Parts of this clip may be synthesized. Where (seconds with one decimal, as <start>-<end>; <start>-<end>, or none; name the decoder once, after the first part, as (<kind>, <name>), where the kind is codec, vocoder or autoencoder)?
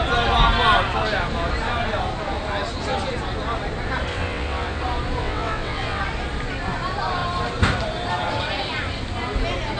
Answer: 4.1-4.8 (vocoder, WaveNeXt); 5.2-6.0